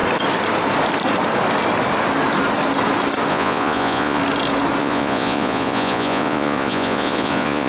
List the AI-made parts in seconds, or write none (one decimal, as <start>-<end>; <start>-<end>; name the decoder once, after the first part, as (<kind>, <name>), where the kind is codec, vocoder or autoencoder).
3.3-4.2 (vocoder, Vocos); 4.8-7.7